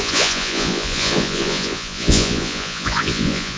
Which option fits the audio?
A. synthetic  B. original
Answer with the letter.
A